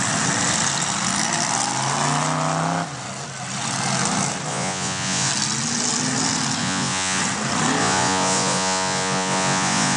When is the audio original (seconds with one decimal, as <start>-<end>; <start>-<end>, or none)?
0.0-4.5; 5.3-6.6; 7.2-7.8